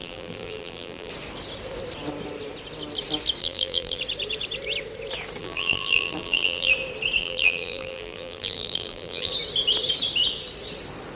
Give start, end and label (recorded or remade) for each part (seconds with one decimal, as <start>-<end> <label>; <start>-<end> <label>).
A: 0.0-1.1 remade; 1.1-3.4 recorded; 3.4-4.0 remade; 4.0-5.4 recorded; 5.4-6.7 remade; 6.7-7.2 recorded; 7.2-9.3 remade; 9.3-11.2 recorded